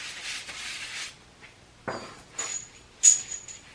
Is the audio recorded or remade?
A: recorded